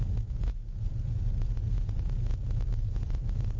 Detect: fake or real fake